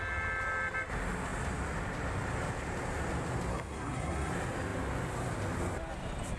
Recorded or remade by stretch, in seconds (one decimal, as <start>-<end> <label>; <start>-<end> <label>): 0.0-3.5 recorded; 3.5-4.3 remade; 4.3-6.4 recorded